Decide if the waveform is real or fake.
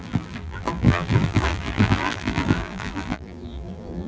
fake